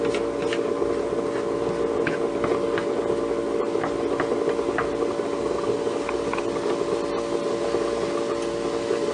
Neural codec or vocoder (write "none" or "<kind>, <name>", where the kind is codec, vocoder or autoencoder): none